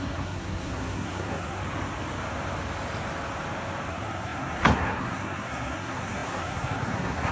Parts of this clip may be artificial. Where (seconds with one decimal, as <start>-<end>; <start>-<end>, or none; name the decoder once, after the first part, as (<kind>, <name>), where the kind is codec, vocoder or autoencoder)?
0.0-1.6 (codec, SNAC); 3.9-7.3